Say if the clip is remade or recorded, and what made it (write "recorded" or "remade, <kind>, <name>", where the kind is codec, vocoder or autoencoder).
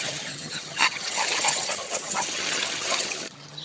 remade, vocoder, HiFi-GAN